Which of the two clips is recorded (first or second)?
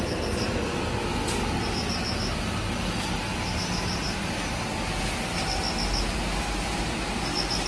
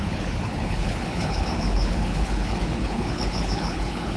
first